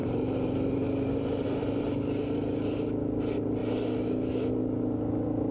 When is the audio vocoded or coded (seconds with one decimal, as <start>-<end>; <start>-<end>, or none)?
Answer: 0.0-1.9

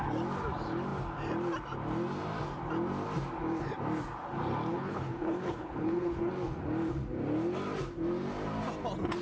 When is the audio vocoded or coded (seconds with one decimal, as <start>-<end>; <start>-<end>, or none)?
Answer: 4.7-6.3

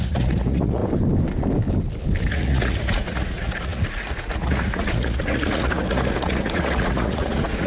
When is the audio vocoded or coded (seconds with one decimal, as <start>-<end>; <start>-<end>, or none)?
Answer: 0.0-0.8; 2.3-7.7

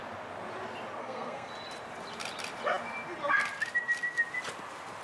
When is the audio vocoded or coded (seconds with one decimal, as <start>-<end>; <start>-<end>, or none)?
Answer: 1.0-1.5

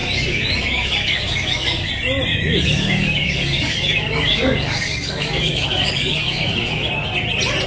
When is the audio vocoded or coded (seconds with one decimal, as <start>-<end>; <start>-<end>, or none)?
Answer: 0.0-1.9; 2.3-6.9

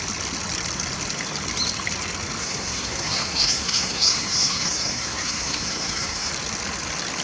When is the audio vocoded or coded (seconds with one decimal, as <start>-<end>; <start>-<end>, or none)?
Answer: 2.4-6.3

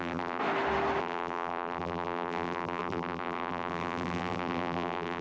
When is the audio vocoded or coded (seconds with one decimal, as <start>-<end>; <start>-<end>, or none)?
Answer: 0.0-0.4; 1.0-5.2